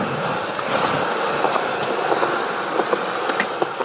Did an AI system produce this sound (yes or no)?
no